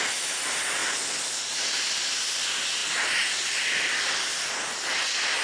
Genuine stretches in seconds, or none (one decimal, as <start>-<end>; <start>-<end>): 0.0-0.8; 1.4-2.8; 4.1-5.4